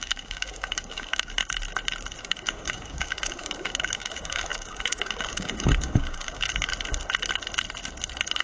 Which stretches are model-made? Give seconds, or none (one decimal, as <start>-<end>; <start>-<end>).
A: 0.0-1.4; 2.2-6.7